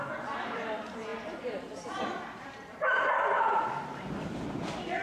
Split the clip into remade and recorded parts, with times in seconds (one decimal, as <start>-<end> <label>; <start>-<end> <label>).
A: 0.0-1.1 recorded; 1.1-4.1 remade; 4.1-5.0 recorded